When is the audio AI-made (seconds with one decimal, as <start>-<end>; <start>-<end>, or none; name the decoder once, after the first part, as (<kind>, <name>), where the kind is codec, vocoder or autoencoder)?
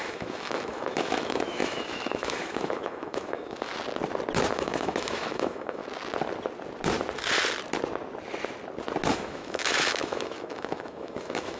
0.0-3.7 (autoencoder, DAC-VAE); 4.5-5.8; 9.1-11.6